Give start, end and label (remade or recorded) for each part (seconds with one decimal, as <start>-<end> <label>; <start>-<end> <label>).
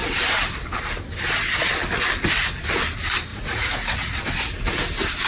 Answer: 0.0-3.3 recorded; 3.3-4.2 remade; 4.2-5.3 recorded